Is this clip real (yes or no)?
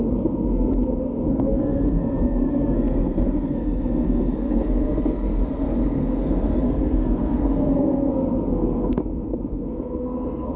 no